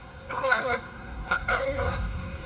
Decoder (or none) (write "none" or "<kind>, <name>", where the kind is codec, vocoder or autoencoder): codec, SNAC